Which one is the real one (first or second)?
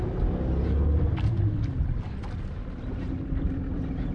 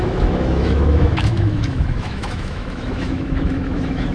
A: first